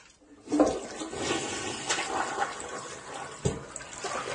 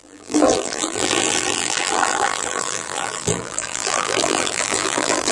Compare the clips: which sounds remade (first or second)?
second